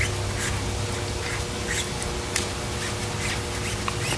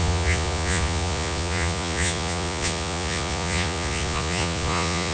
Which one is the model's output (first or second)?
second